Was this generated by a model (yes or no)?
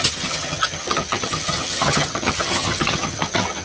yes